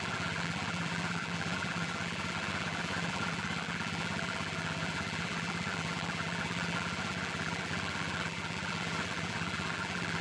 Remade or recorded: remade